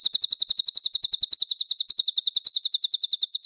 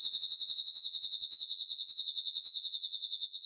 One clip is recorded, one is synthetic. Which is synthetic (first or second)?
second